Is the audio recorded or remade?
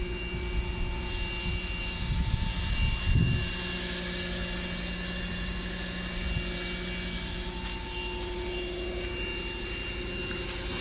recorded